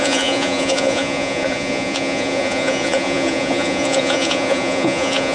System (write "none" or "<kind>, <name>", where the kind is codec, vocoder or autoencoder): vocoder, Vocos